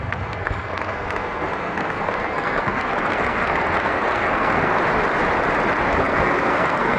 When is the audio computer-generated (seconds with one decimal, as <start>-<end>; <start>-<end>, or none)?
0.0-4.8; 6.0-7.0